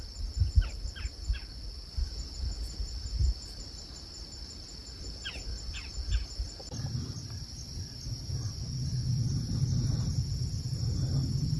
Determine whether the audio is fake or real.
real